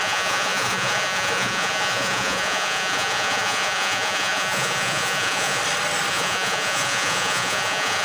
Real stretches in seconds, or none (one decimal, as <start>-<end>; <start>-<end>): 5.6-6.1